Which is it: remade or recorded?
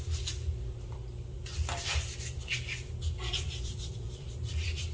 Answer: remade